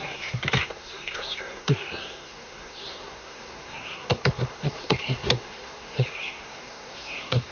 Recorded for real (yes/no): no